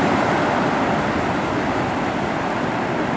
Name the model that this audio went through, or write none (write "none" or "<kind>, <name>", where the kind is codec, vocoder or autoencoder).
none